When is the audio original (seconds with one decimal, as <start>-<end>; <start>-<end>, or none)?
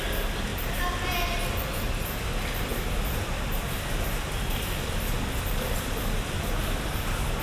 0.0-2.7; 7.0-7.4